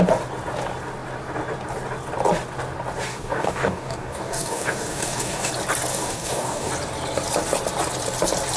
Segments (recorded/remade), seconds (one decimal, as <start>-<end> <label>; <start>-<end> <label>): 0.0-3.1 recorded; 3.1-5.5 remade; 5.5-5.9 recorded; 5.9-6.7 remade; 6.7-8.6 recorded